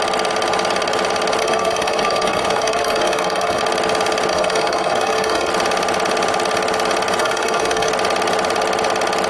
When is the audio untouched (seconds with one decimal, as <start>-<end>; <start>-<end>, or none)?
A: 0.0-1.4; 3.6-4.3; 5.5-7.2; 7.9-9.3